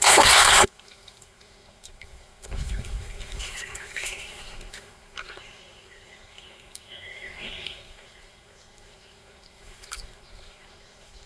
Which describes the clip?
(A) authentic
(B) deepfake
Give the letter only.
B